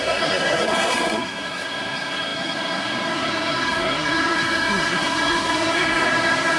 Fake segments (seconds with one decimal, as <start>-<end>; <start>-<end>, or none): 0.0-6.6